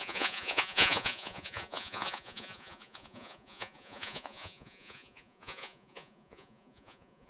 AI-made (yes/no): yes